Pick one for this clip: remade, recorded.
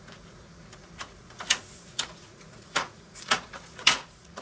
remade